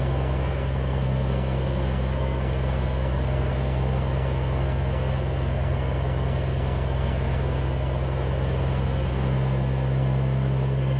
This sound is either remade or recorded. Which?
remade